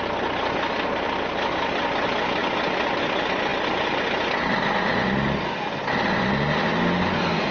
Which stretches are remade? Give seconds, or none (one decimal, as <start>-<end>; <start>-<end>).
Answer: none